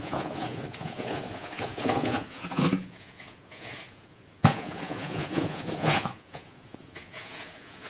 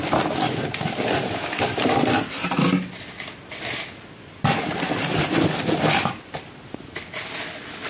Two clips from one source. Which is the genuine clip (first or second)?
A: second